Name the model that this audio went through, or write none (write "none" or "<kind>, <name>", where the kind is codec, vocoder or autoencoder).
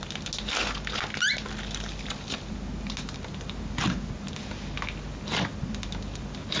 none